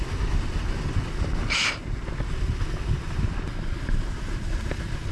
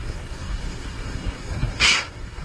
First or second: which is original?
first